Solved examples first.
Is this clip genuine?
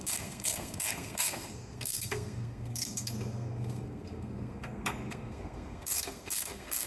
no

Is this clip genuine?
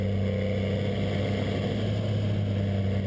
yes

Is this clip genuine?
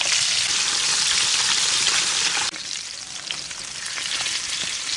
yes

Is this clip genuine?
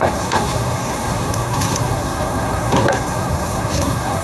no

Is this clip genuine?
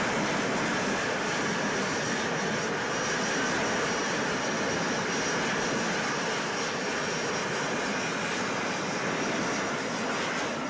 yes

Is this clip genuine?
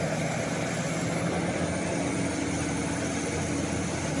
yes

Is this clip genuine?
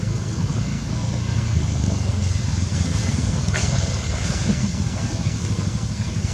no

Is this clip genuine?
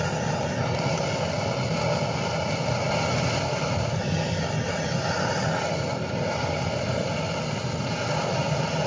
yes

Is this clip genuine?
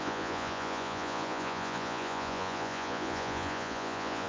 no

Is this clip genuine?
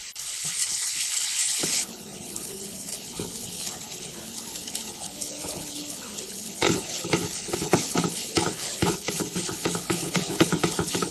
no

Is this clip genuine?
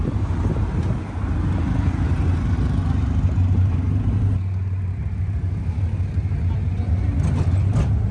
yes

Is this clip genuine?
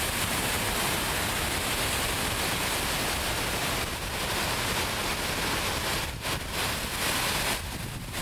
yes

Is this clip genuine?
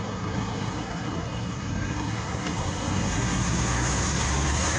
no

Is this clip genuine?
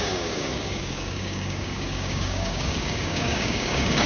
no